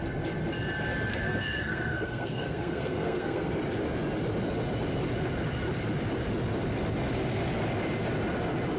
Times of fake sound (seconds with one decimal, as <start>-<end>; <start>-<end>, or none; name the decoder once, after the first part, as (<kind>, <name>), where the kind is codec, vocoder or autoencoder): 1.1-3.5 (codec, SNAC)